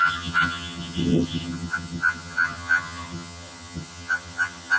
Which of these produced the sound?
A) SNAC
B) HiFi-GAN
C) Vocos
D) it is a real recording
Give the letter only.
B